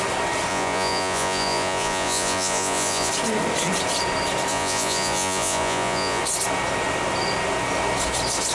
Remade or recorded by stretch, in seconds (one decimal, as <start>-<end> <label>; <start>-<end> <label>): 0.0-0.5 recorded; 0.5-3.1 remade; 3.1-4.5 recorded; 4.5-6.2 remade; 6.2-8.5 recorded